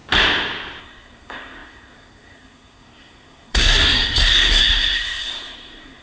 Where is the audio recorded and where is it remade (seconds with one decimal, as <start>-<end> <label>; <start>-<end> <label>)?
0.0-0.8 recorded; 0.8-6.0 remade